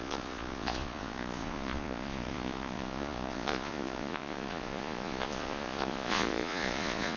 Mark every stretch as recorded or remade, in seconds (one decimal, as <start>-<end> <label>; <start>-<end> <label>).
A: 0.0-7.2 remade